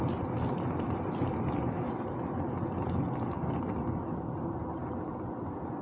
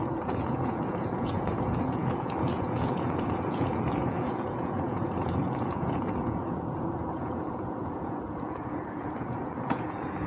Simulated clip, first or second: second